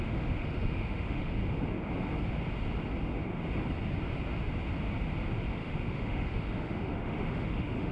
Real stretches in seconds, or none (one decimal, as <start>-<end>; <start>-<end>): 1.4-5.5